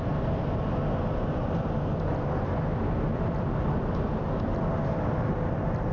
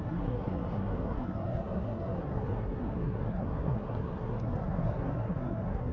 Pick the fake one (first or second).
second